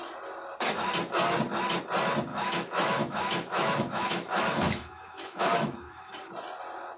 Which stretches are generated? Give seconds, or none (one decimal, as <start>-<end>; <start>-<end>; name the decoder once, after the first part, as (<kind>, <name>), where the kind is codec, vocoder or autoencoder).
2.3-6.1 (autoencoder, DAC-VAE)